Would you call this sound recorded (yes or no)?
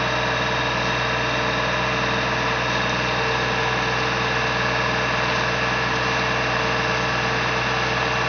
yes